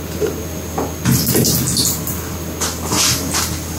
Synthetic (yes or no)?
no